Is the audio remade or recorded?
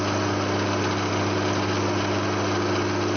recorded